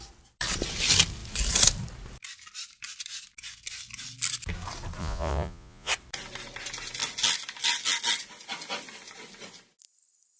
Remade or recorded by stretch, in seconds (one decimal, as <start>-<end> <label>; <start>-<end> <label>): 0.0-5.0 recorded; 5.0-5.9 remade; 5.9-10.4 recorded